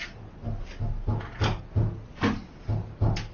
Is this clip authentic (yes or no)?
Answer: yes